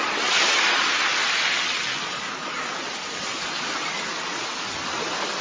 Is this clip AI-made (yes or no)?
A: no